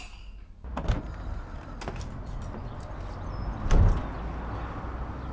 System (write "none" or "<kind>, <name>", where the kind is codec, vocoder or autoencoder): none